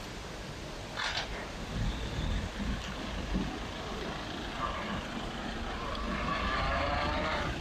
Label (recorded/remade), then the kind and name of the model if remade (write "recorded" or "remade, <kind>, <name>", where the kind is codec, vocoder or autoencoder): recorded